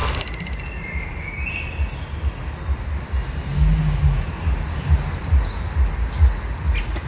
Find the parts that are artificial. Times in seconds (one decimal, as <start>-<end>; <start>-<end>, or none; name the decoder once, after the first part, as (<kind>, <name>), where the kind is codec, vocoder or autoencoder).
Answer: none